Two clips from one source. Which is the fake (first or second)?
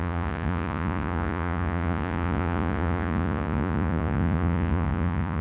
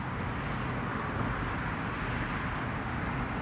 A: first